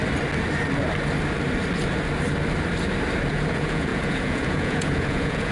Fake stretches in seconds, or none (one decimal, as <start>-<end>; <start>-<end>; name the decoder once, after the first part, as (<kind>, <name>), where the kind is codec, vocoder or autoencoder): 3.3-5.5 (vocoder, Vocos)